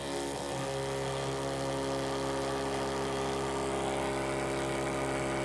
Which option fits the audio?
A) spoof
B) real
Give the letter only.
B